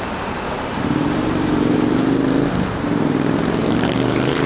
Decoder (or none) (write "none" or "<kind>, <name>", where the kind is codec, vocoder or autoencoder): vocoder, BigVGAN v2